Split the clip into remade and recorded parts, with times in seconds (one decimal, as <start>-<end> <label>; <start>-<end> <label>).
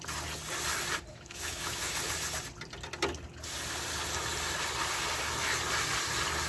0.0-1.1 recorded; 1.1-1.9 remade; 1.9-6.5 recorded